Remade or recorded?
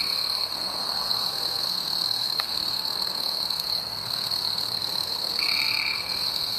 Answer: remade